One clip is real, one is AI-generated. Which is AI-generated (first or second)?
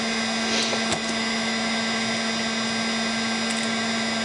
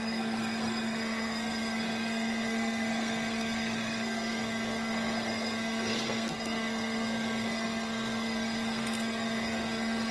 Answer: second